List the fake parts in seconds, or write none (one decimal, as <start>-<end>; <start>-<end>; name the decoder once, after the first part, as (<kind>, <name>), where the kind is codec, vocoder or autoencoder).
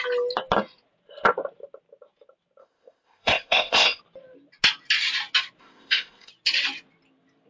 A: 2.6-4.0 (codec, ZipCodec); 5.6-6.3